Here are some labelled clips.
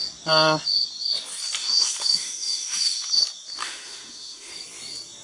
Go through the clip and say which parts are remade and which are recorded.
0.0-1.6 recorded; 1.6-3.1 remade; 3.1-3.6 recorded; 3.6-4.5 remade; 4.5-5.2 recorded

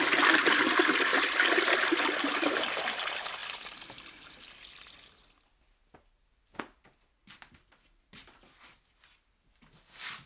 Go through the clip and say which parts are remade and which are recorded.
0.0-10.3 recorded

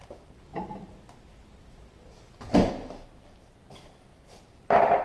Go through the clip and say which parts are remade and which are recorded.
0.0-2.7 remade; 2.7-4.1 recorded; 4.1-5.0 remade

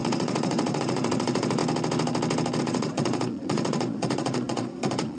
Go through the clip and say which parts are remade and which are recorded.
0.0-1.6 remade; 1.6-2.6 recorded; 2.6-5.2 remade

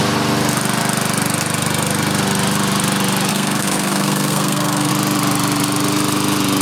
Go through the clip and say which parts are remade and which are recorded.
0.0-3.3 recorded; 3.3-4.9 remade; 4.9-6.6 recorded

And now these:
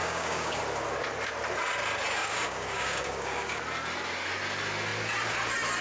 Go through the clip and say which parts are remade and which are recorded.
0.0-0.6 remade; 0.6-2.2 recorded; 2.2-3.6 remade; 3.6-5.8 recorded

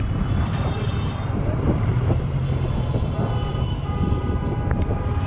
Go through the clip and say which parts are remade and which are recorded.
0.0-1.9 recorded; 1.9-2.4 remade; 2.4-3.5 recorded; 3.5-5.3 remade

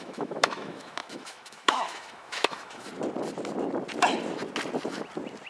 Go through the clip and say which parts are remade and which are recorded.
0.0-2.9 remade; 2.9-5.5 recorded